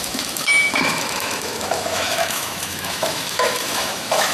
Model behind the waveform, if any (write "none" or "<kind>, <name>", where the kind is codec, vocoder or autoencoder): autoencoder, DAC-VAE